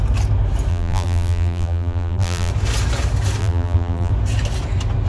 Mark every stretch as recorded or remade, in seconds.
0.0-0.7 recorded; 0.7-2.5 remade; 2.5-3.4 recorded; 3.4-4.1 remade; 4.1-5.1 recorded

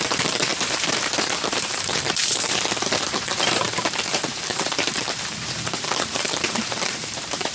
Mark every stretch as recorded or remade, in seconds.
0.0-7.5 remade

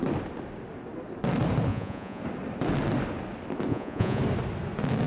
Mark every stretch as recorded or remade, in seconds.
0.0-1.7 recorded; 1.7-2.2 remade; 2.2-3.7 recorded; 3.7-4.2 remade; 4.2-5.1 recorded

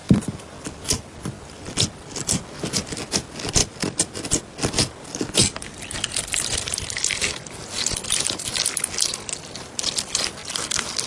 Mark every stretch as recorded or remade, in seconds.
0.0-11.1 recorded

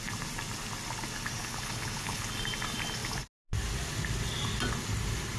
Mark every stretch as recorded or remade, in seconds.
0.0-1.4 recorded; 1.4-2.3 remade; 2.3-5.4 recorded

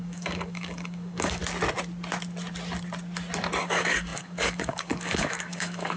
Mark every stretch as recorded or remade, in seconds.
0.0-1.4 remade; 1.4-3.6 recorded; 3.6-6.0 remade

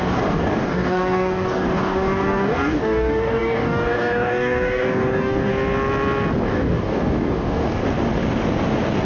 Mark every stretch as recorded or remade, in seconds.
0.0-5.5 remade; 5.5-6.4 recorded; 6.4-7.8 remade; 7.8-9.1 recorded